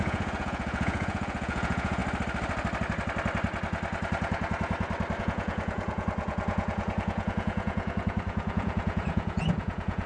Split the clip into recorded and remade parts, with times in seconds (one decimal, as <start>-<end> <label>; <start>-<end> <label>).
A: 0.0-2.0 remade; 2.0-5.2 recorded; 5.2-10.1 remade